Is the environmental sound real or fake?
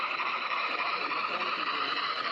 fake